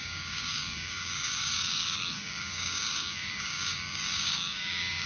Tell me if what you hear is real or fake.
fake